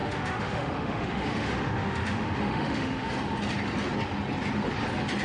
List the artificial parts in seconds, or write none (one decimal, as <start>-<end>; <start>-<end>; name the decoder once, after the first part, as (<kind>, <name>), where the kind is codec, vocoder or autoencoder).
0.0-3.1 (autoencoder, DAC-VAE)